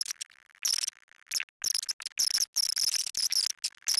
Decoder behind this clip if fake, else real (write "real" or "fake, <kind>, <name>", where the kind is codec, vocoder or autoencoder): real